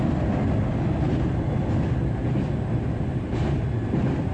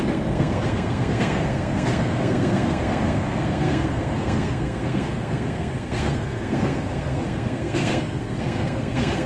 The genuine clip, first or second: first